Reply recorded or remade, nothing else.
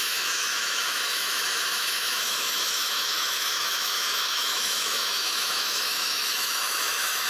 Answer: remade